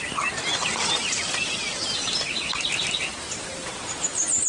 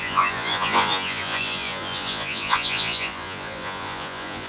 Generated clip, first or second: second